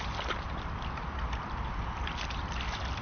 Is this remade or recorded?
recorded